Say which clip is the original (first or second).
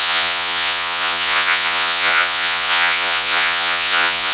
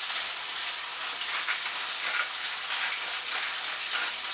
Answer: second